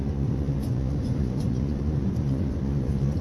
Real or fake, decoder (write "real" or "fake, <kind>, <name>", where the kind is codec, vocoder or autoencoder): fake, vocoder, Vocos